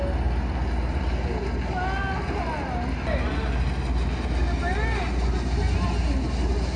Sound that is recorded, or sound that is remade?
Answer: recorded